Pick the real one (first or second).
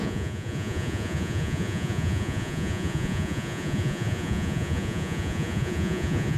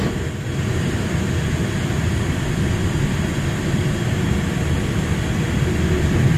second